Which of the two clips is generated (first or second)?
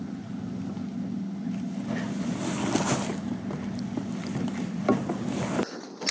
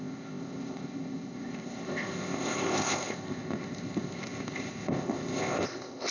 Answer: second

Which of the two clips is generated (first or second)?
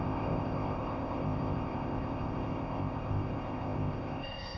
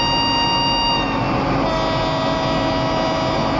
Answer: first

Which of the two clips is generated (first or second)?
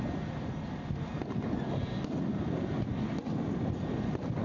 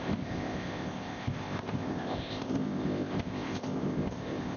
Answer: second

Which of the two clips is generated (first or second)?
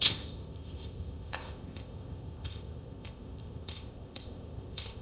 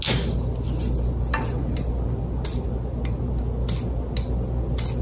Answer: first